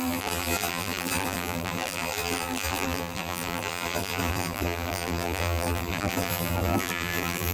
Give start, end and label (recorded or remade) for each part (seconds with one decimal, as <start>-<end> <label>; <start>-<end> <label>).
0.0-7.5 remade